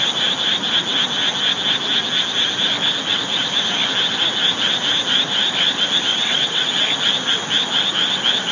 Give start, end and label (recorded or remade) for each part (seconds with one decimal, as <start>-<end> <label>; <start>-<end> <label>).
0.0-6.1 recorded; 6.1-6.7 remade; 6.7-8.5 recorded